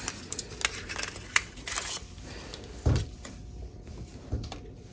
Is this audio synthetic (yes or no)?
no